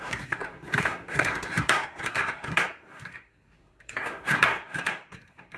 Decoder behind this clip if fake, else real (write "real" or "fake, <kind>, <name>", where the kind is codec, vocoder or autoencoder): fake, codec, SNAC